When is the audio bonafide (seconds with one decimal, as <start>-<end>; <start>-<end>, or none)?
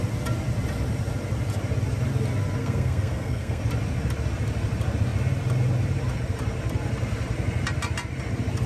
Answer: 0.0-2.6; 3.6-8.7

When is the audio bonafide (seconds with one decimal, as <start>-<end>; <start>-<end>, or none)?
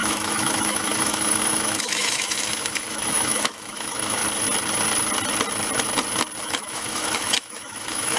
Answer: 4.2-6.4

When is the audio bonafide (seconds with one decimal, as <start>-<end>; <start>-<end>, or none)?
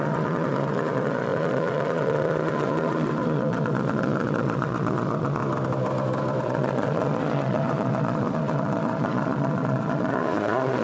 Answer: 5.4-6.4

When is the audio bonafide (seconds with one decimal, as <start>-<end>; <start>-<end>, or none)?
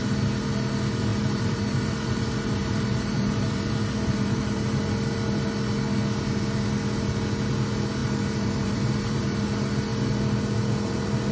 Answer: 0.0-1.1; 4.8-8.0; 9.2-11.3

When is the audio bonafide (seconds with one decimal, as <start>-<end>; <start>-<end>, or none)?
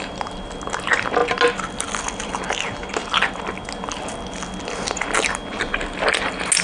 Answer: 0.0-6.6